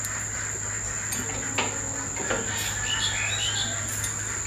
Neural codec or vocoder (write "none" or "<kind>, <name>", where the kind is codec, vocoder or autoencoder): none